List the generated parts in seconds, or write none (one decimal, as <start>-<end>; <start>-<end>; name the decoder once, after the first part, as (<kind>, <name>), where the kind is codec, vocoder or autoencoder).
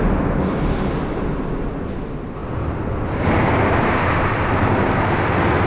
none